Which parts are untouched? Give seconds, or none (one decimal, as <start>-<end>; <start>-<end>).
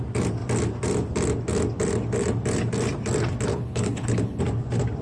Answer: 0.0-3.5; 4.4-5.0